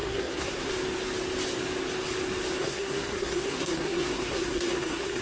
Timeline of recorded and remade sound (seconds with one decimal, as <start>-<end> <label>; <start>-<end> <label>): 0.0-0.7 remade; 0.7-2.6 recorded; 2.6-5.2 remade